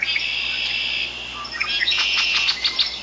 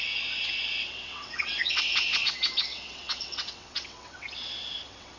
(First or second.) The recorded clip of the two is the first